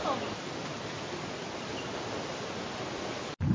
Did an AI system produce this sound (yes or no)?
no